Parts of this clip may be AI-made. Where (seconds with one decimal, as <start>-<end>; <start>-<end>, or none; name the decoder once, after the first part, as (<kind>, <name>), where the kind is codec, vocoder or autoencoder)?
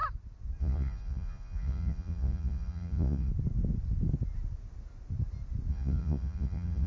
0.6-3.3 (vocoder, Vocos); 5.7-6.9